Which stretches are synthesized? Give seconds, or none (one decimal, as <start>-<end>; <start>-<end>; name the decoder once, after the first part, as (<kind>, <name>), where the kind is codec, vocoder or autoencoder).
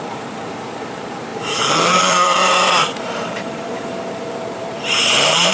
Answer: 0.0-1.3 (vocoder, BigVGAN v2); 2.0-5.5